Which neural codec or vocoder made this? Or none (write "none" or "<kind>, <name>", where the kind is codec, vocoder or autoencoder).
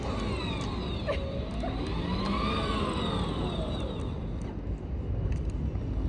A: none